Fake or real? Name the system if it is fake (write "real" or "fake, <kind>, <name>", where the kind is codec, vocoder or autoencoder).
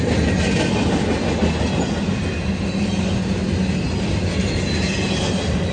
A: real